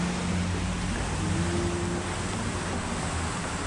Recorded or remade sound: recorded